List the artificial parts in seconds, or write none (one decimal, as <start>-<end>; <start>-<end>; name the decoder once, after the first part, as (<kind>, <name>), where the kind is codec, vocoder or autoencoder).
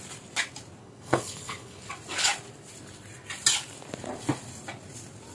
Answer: 0.8-1.8 (codec, HILCodec)